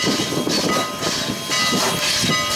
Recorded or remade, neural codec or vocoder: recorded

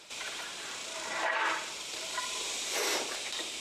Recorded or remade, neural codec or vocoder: remade, vocoder, BigVGAN v2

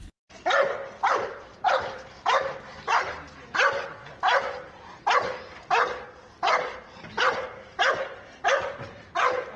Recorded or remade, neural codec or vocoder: recorded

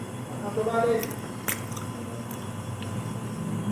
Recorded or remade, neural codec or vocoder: recorded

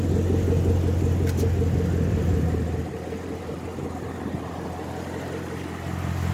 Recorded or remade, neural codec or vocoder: recorded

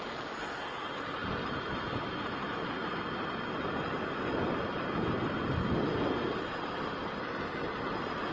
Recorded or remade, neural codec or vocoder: recorded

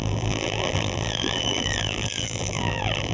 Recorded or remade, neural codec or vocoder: remade, vocoder, BigVGAN v2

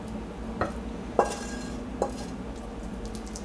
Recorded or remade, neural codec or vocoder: recorded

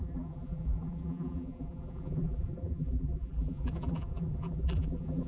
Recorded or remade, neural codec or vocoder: remade, vocoder, BigVGAN v2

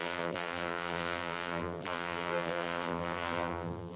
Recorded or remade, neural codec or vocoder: remade, vocoder, BigVGAN v2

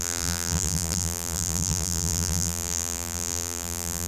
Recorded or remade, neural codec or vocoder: remade, vocoder, BigVGAN v2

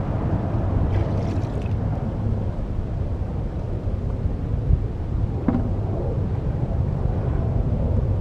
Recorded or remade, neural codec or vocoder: remade, vocoder, BigVGAN v2